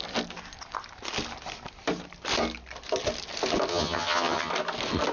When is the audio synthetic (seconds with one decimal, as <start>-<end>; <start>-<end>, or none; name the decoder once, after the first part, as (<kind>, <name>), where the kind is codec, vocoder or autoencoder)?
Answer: 3.7-4.5 (vocoder, HiFi-GAN)